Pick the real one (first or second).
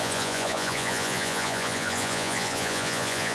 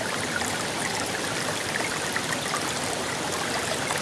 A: second